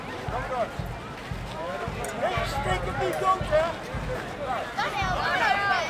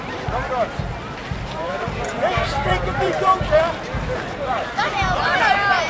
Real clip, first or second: first